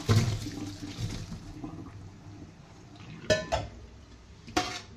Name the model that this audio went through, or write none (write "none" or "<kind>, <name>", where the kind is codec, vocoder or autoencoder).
none